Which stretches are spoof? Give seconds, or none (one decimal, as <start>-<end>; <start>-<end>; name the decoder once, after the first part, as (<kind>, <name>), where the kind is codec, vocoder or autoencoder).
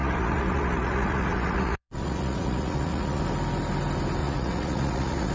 0.0-3.2 (vocoder, Vocos); 4.2-5.3